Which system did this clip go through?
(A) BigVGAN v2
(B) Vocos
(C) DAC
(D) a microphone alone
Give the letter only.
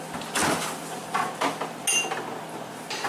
D